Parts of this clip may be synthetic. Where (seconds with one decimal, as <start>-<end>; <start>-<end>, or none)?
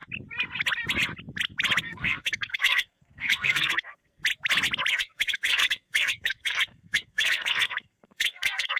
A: 1.8-4.2; 4.9-8.8